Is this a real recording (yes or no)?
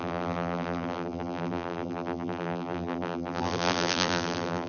no